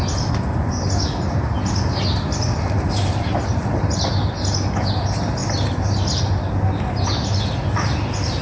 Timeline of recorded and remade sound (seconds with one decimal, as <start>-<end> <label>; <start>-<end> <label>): 0.0-8.4 recorded

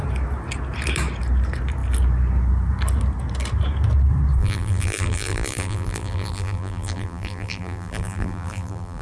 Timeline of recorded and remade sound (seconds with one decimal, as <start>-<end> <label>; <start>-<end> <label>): 0.0-4.4 recorded; 4.4-9.0 remade